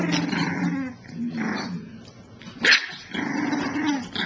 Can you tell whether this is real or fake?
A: real